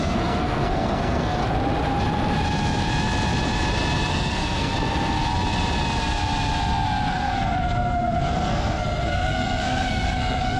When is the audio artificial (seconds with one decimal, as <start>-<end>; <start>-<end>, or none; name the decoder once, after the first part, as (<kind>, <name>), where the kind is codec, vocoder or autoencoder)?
0.0-1.4 (codec, SNAC); 4.1-4.7; 7.1-10.6